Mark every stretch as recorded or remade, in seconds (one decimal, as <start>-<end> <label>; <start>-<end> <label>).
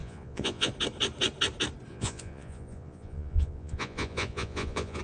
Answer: 0.0-0.7 remade; 0.7-1.9 recorded; 1.9-5.0 remade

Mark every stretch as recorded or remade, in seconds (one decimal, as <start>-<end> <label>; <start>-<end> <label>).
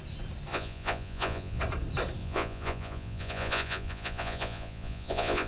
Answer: 0.0-0.5 recorded; 0.5-1.6 remade; 1.6-2.2 recorded; 2.2-5.5 remade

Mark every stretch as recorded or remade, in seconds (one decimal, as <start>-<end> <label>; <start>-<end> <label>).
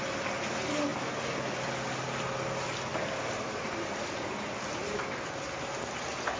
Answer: 0.0-0.9 recorded; 0.9-1.7 remade; 1.7-6.4 recorded